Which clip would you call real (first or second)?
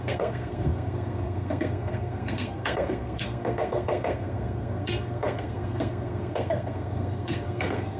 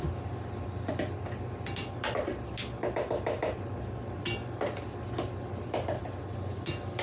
second